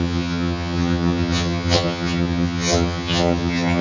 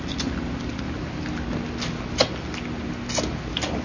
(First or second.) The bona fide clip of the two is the second